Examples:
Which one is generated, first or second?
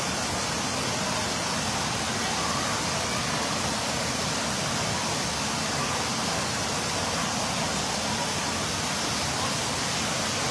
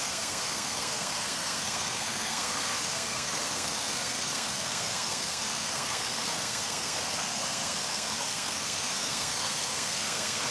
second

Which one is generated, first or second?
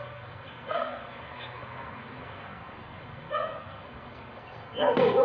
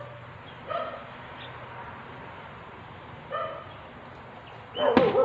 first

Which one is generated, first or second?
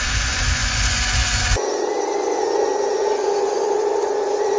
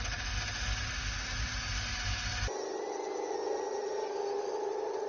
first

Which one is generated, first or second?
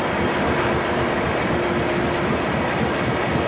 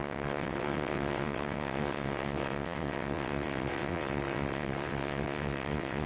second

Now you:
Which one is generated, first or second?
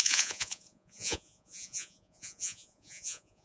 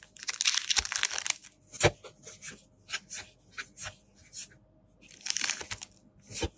first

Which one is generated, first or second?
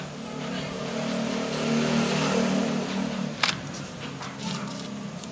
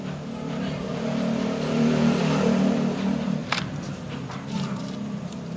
second